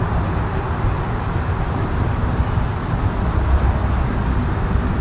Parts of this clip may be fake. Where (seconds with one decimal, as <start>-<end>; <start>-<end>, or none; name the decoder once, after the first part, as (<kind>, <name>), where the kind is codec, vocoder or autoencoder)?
none